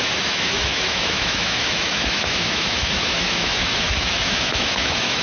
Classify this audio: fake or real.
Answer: fake